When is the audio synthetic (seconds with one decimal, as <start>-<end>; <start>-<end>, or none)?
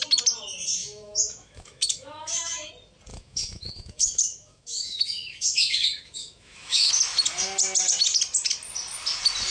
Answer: 0.8-2.7; 3.1-6.9